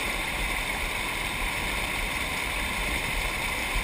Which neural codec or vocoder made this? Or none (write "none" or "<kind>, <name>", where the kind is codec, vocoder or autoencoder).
vocoder, BigVGAN v2